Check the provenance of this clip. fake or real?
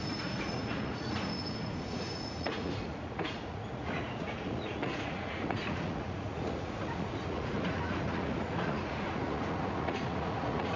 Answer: fake